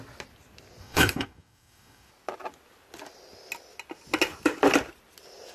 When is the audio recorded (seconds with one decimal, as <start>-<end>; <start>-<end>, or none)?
0.0-0.8; 2.1-5.5